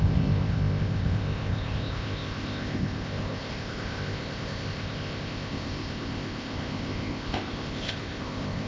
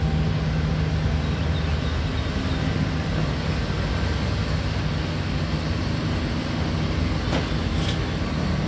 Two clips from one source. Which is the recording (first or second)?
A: second